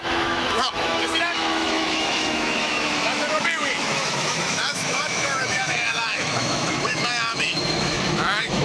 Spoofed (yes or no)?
yes